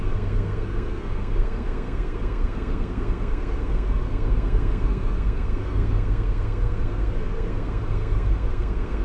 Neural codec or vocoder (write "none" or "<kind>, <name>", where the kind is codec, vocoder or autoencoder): codec, SNAC